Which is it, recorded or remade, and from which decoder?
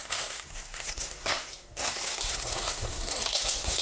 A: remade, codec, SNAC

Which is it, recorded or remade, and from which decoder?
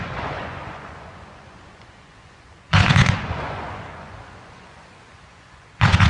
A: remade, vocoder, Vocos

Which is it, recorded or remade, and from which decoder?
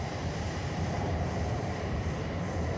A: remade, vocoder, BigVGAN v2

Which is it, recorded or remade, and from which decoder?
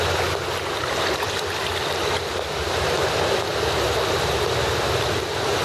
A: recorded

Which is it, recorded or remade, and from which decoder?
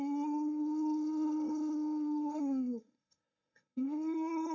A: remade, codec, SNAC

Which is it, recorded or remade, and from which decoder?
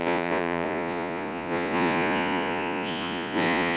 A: remade, vocoder, Vocos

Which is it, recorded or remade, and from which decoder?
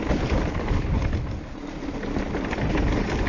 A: recorded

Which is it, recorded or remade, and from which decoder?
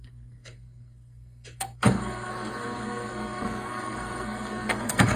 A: remade, codec, SNAC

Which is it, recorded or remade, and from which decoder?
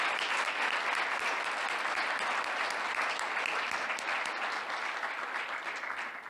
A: recorded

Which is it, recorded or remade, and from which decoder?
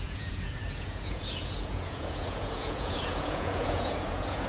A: remade, vocoder, Vocos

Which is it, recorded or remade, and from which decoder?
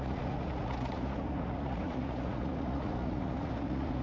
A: remade, vocoder, Vocos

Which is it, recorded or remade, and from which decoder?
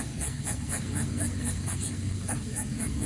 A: remade, codec, SNAC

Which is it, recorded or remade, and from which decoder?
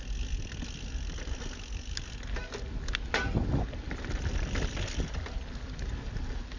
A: recorded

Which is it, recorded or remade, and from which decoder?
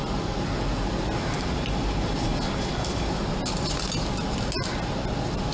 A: recorded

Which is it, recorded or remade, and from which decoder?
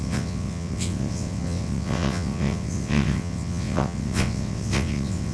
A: remade, vocoder, WaveNeXt